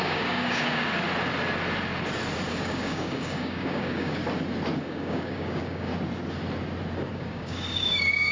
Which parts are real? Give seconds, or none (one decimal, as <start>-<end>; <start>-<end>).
0.9-2.5; 4.2-4.8; 5.9-7.1